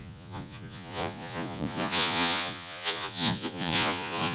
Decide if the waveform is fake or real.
fake